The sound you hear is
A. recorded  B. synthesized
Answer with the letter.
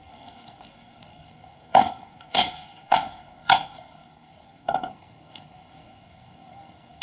B